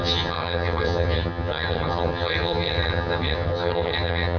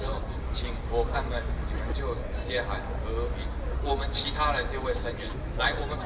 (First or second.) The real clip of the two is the second